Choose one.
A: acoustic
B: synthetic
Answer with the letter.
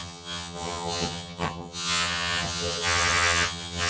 B